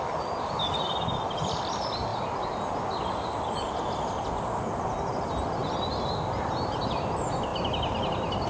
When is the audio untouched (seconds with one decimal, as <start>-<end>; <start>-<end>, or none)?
0.0-8.5